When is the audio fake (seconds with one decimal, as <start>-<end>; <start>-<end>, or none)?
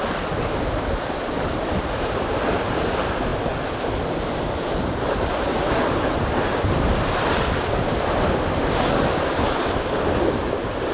0.0-3.3; 8.0-10.9